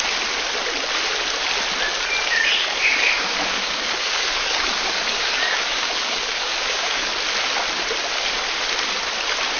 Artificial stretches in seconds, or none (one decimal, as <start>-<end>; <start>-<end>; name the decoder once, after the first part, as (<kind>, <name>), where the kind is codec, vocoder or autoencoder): 2.4-7.1 (codec, DAC)